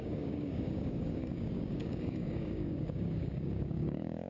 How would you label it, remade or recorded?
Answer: remade